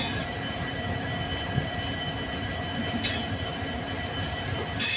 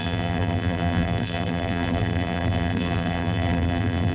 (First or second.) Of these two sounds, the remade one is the second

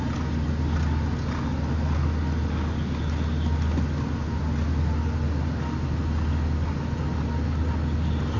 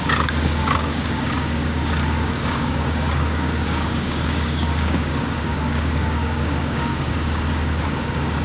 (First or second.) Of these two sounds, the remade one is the second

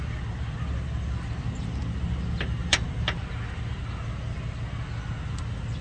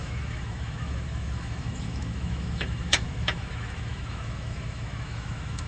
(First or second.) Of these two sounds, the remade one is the second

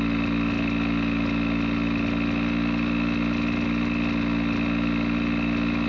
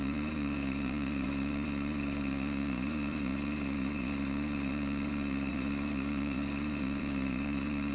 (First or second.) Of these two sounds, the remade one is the second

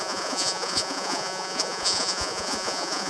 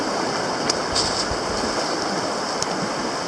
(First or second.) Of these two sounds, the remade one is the first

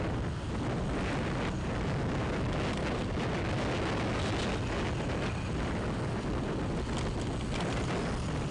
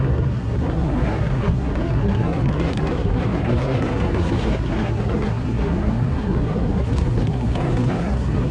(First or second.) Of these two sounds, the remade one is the second